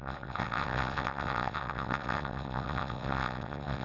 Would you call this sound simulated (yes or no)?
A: yes